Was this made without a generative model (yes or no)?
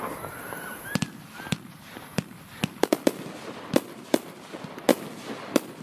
yes